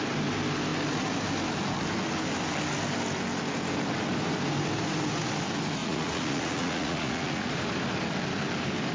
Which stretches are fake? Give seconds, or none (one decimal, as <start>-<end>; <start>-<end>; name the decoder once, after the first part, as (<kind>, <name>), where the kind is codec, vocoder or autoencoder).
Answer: 5.8-7.5 (vocoder, Vocos)